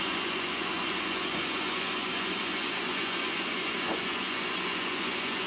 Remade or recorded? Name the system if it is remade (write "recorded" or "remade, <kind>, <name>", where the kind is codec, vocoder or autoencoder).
remade, vocoder, Vocos